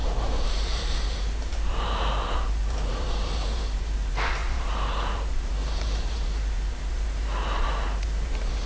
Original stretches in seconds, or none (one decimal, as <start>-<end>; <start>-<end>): none